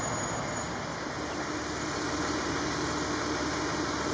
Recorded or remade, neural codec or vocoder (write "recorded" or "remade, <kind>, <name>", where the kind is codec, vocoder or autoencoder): recorded